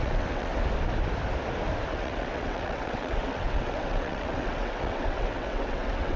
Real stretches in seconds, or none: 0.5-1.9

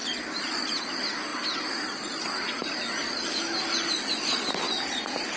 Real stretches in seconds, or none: 0.5-5.4

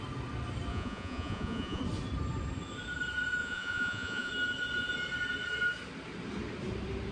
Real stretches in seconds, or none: 0.0-0.7; 1.8-3.4; 4.3-7.1

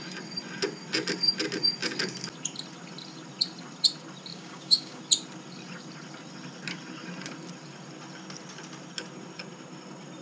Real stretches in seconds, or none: 0.0-4.3; 5.0-10.2

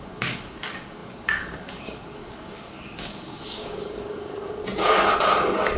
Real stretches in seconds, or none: 4.6-5.8

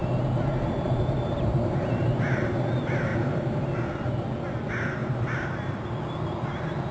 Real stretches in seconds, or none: 2.6-3.1; 3.7-5.0; 6.0-6.9